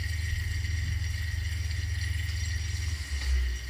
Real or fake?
real